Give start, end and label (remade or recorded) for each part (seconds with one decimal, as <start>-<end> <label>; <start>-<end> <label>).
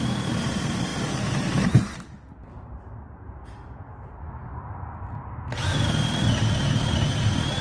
0.0-7.6 recorded